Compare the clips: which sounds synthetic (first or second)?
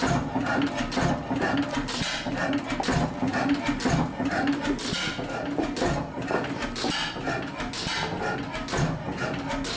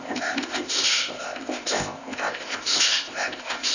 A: second